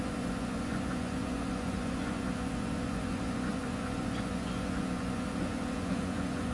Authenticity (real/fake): fake